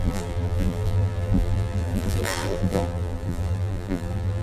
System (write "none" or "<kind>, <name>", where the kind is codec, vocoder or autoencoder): vocoder, BigVGAN v2